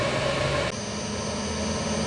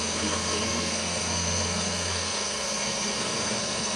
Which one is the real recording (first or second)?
first